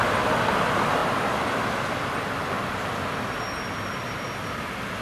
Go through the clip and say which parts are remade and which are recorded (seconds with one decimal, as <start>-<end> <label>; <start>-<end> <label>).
0.0-5.0 recorded